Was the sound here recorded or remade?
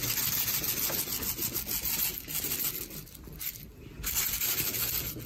recorded